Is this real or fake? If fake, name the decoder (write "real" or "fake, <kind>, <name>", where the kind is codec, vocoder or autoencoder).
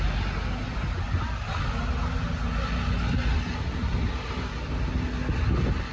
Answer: real